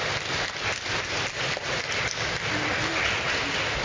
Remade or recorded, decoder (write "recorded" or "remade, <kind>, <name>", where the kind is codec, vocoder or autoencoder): recorded